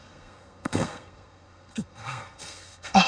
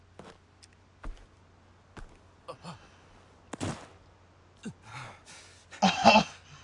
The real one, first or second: second